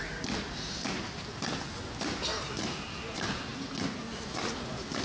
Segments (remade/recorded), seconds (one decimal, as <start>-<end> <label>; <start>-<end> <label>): 0.0-5.0 recorded